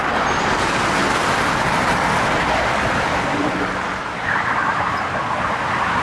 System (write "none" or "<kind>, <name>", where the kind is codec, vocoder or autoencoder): none